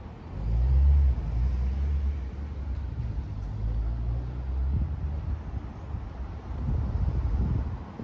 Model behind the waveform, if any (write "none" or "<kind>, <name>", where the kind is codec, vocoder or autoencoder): none